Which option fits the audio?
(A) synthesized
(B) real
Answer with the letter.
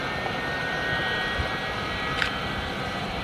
B